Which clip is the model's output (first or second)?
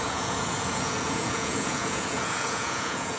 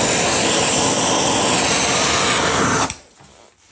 first